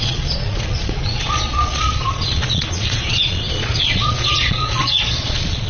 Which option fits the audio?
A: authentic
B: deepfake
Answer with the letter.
B